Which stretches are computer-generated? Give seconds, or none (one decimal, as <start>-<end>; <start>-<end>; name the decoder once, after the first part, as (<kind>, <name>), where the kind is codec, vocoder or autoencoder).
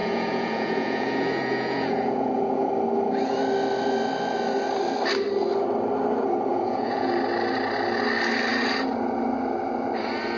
0.0-2.7 (vocoder, Vocos); 6.5-7.1